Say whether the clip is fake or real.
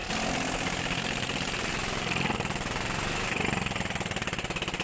real